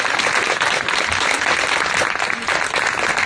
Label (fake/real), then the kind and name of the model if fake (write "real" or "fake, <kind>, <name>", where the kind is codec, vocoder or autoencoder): real